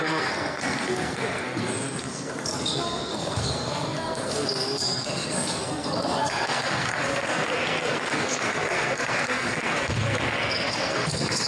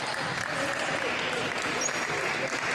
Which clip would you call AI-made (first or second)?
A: first